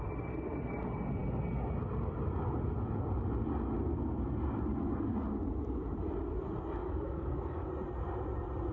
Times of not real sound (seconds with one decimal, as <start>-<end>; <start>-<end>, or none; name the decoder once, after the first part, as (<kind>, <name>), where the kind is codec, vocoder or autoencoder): 6.8-7.7 (codec, DAC)